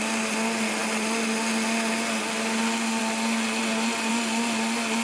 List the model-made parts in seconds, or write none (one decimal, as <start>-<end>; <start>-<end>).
none